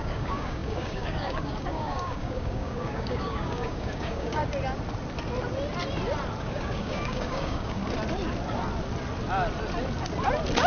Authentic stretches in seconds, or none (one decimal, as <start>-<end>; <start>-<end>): 4.4-6.4; 7.8-10.7